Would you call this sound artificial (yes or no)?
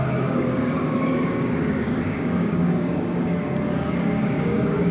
yes